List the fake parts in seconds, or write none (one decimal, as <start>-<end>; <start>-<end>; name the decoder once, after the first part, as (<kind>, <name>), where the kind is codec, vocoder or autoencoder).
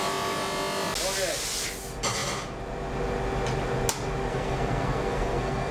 4.3-5.7 (codec, SNAC)